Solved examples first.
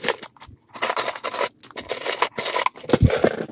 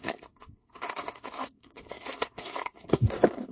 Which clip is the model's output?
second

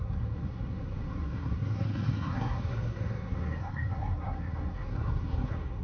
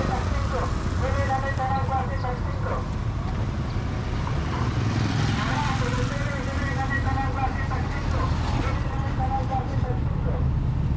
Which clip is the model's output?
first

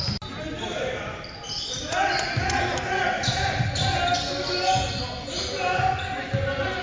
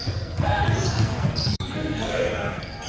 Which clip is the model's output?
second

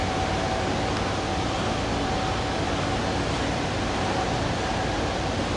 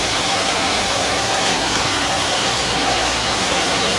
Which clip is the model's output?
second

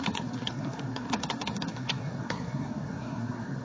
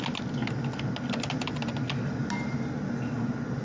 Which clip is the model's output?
first